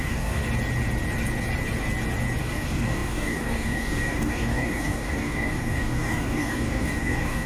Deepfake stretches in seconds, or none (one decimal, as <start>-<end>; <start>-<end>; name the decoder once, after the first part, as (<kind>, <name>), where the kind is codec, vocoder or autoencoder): 0.0-0.4 (codec, DAC); 2.4-7.5